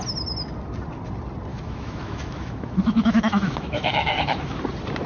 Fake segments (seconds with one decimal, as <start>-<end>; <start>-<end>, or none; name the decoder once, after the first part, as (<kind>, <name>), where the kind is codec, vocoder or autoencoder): 1.5-4.6 (autoencoder, DAC-VAE)